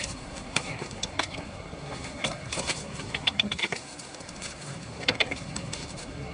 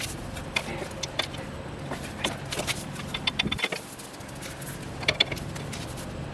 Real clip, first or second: second